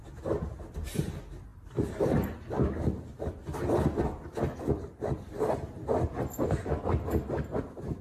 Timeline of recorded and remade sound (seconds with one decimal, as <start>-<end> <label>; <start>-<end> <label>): 0.0-8.0 recorded